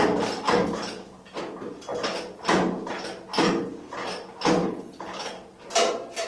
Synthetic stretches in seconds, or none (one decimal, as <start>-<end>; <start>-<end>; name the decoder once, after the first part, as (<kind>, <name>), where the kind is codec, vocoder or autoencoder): 4.6-5.3 (codec, HILCodec)